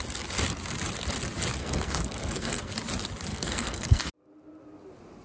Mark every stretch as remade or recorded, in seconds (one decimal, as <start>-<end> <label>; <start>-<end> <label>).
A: 0.0-1.6 recorded; 1.6-2.7 remade; 2.7-3.3 recorded; 3.3-4.1 remade; 4.1-5.2 recorded